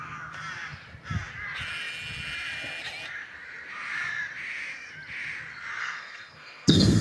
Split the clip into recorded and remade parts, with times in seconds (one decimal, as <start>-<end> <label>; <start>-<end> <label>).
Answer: 0.0-5.8 recorded; 5.8-7.0 remade

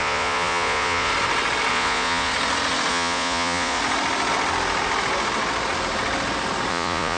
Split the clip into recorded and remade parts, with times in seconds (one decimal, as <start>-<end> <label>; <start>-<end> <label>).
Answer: 0.0-1.1 remade; 1.1-1.7 recorded; 1.7-2.3 remade; 2.3-2.9 recorded; 2.9-3.8 remade; 3.8-6.7 recorded; 6.7-7.2 remade

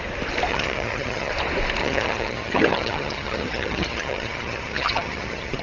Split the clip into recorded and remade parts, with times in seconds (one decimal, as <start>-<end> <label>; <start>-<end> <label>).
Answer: 0.0-0.5 recorded; 0.5-1.3 remade; 1.3-1.8 recorded; 1.8-5.6 remade

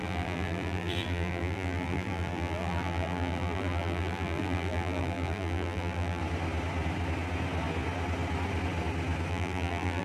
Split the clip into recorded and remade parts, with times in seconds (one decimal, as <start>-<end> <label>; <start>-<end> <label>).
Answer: 0.0-6.2 remade; 6.2-9.3 recorded; 9.3-10.0 remade

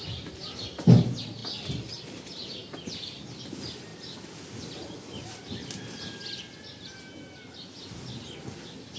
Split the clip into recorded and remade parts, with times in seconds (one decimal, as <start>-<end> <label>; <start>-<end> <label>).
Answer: 0.0-9.0 recorded

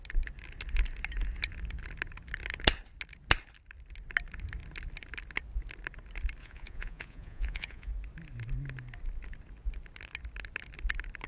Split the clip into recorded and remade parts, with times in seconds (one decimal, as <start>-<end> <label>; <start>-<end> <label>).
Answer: 0.0-6.4 recorded; 6.4-7.9 remade; 7.9-11.3 recorded